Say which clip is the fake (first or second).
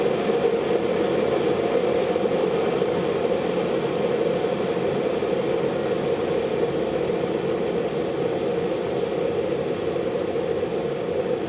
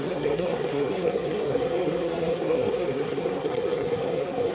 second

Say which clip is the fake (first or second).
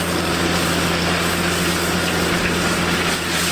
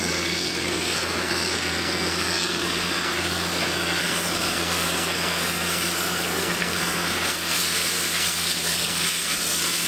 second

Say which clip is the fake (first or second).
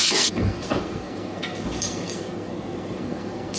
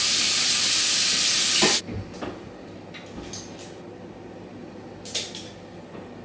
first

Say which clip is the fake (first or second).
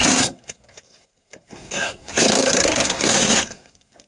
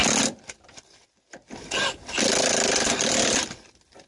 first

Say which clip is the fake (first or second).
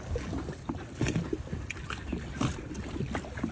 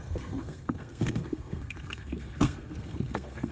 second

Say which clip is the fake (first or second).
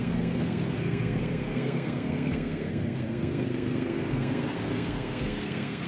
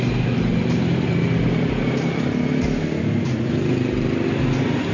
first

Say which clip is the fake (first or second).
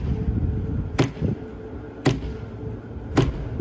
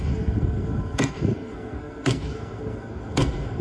second